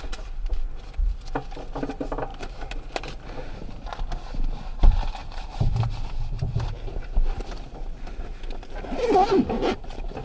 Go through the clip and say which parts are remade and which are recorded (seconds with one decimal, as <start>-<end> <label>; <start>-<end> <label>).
0.0-2.3 recorded; 2.3-3.2 remade; 3.2-5.2 recorded; 5.2-5.9 remade; 5.9-10.2 recorded